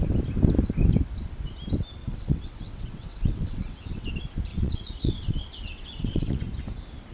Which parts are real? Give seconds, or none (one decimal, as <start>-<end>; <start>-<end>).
0.0-2.0; 4.1-4.5; 6.4-7.1